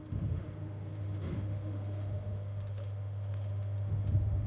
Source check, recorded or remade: remade